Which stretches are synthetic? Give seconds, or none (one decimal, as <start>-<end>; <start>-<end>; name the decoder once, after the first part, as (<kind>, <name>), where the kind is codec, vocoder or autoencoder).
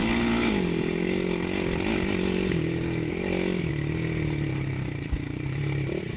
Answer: 4.5-5.6 (vocoder, BigVGAN v2)